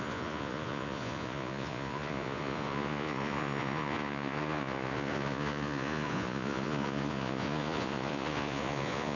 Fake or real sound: fake